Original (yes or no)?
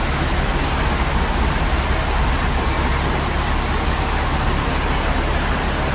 yes